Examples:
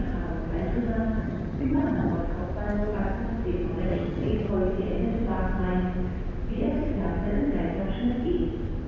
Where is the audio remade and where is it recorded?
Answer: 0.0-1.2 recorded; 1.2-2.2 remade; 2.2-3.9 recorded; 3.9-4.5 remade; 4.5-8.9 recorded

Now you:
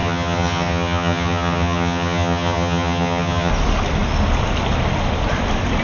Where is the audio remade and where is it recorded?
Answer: 0.0-3.5 remade; 3.5-5.8 recorded

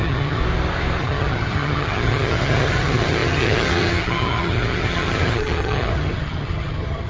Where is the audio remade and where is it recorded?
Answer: 0.0-0.4 remade; 0.4-1.0 recorded; 1.0-7.1 remade

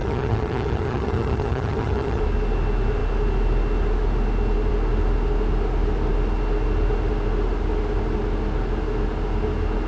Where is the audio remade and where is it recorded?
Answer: 0.0-2.2 remade; 2.2-9.9 recorded

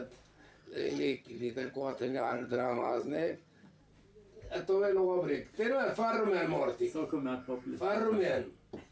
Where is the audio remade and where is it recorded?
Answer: 0.0-0.6 recorded; 0.6-3.8 remade; 3.8-8.9 recorded

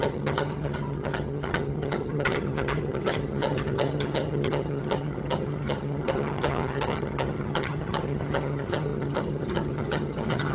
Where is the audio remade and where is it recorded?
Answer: 0.0-10.5 remade

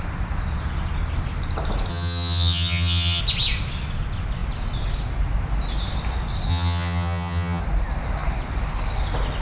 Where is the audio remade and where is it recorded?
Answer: 0.0-1.9 recorded; 1.9-3.2 remade; 3.2-6.5 recorded; 6.5-7.6 remade; 7.6-9.4 recorded